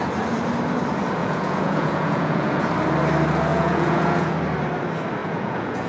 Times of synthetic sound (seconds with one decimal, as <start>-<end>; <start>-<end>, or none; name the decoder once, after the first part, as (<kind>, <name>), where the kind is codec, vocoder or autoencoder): 1.2-2.7 (vocoder, Vocos); 3.5-4.4; 5.2-5.9